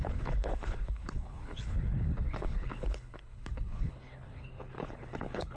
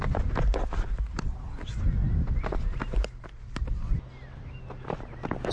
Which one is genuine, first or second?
second